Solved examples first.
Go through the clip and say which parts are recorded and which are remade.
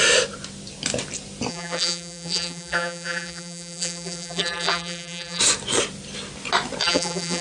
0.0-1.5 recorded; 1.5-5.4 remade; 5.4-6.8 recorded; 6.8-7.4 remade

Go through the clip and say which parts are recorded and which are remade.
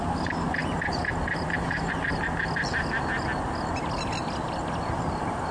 0.0-0.6 recorded; 0.6-1.9 remade; 1.9-5.5 recorded